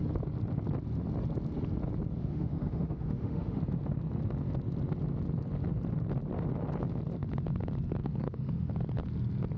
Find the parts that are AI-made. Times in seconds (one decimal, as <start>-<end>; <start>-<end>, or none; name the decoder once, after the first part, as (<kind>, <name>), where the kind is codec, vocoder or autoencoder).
2.2-3.6 (autoencoder, DAC-VAE); 8.0-8.7